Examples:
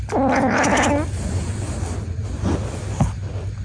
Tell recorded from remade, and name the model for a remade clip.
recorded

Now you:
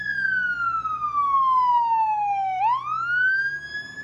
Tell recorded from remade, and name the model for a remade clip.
recorded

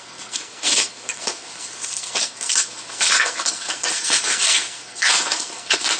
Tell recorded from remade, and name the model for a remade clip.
remade, codec, SNAC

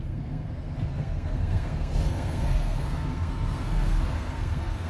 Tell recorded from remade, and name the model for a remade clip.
remade, codec, SNAC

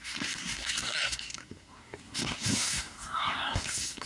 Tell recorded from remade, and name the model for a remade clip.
remade, codec, SNAC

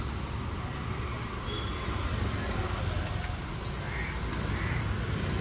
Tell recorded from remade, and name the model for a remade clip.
recorded